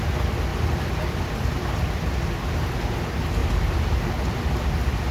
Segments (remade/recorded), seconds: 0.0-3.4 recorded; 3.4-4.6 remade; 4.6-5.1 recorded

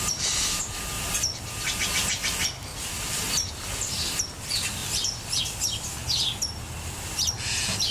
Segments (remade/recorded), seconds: 0.0-2.7 recorded; 2.7-3.5 remade; 3.5-4.8 recorded; 4.8-5.4 remade; 5.4-7.9 recorded

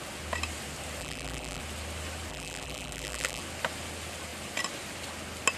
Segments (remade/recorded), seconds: 0.0-1.0 recorded; 1.0-1.6 remade; 1.6-2.3 recorded; 2.3-3.4 remade; 3.4-5.6 recorded

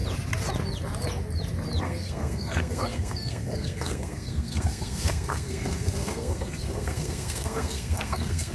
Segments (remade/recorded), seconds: 0.0-1.8 recorded; 1.8-8.5 remade

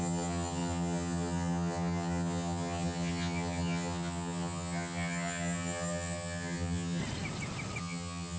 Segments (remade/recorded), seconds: 0.0-7.0 remade; 7.0-7.8 recorded; 7.8-8.4 remade

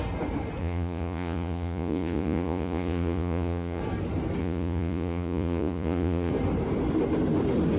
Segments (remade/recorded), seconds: 0.0-0.6 recorded; 0.6-3.8 remade; 3.8-4.4 recorded; 4.4-6.3 remade; 6.3-7.8 recorded